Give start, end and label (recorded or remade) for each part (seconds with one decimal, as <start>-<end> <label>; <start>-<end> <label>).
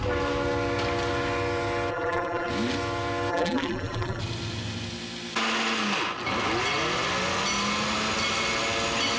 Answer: 0.0-1.9 recorded; 1.9-2.5 remade; 2.5-3.3 recorded; 3.3-4.2 remade; 4.2-9.2 recorded